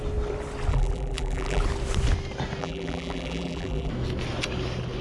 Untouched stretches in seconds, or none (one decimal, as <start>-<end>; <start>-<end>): 0.0-0.7; 1.6-2.6; 3.9-5.0